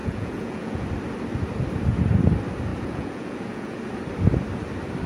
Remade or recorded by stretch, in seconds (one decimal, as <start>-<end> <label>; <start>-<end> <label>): 0.0-0.8 remade; 0.8-2.7 recorded; 2.7-3.8 remade; 3.8-5.1 recorded